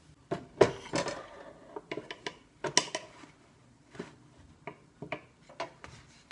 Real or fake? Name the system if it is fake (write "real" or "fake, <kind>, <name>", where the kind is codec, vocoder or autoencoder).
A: real